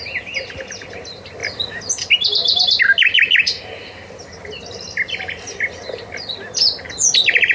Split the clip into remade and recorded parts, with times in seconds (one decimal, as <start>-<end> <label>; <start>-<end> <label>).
0.0-7.5 recorded